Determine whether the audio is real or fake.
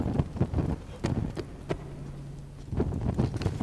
real